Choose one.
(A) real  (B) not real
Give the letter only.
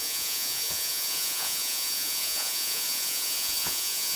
B